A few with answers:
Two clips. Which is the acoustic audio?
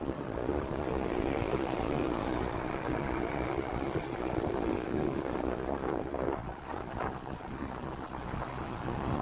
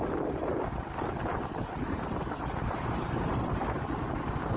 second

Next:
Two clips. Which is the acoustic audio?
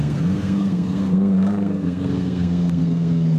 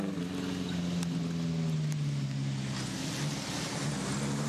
second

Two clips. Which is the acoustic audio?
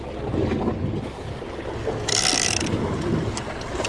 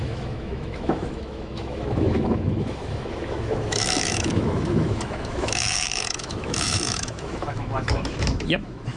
first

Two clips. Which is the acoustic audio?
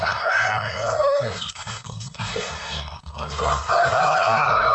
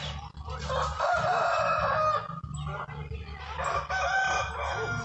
second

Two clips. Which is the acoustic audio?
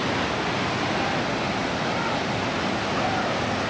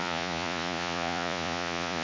first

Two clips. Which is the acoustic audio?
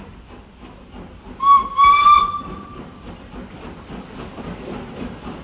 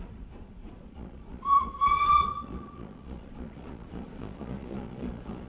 first